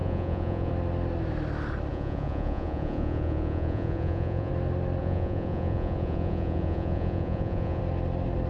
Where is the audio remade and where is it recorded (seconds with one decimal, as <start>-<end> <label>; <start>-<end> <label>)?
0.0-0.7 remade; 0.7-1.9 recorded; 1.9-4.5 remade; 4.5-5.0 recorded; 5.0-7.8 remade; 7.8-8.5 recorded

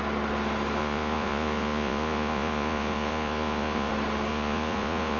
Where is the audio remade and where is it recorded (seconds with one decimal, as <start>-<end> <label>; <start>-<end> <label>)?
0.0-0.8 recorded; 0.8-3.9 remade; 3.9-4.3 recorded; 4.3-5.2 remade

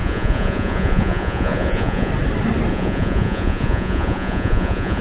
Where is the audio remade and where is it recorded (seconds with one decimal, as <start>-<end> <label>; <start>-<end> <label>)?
0.0-2.1 remade; 2.1-2.7 recorded; 2.7-5.0 remade

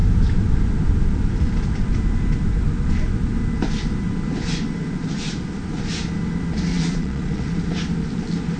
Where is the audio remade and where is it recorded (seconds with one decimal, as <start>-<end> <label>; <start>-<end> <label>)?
0.0-6.7 recorded; 6.7-7.4 remade; 7.4-8.6 recorded

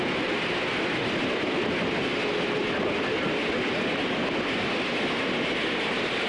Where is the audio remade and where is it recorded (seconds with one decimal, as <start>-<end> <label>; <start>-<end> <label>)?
0.0-6.3 recorded

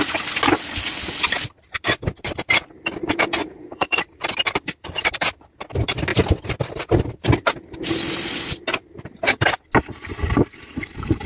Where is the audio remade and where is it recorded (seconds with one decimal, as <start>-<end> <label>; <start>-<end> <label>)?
0.0-3.4 recorded; 3.4-4.0 remade; 4.0-11.3 recorded

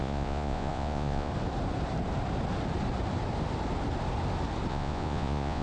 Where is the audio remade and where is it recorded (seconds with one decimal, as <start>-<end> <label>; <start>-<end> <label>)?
0.0-1.3 remade; 1.3-4.7 recorded; 4.7-5.6 remade